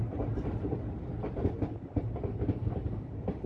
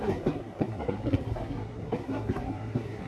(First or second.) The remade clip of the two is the second